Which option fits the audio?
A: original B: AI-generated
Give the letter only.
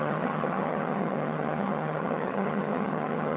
B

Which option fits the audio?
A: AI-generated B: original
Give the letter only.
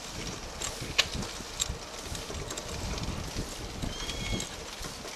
B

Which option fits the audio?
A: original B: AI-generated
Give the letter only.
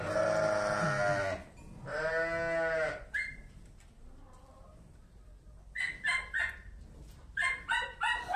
A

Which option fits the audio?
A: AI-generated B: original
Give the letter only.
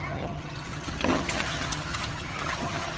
A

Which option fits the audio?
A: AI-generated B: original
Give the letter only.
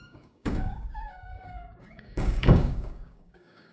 A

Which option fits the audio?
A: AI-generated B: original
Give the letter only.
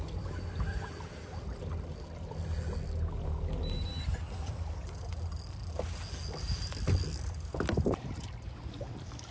B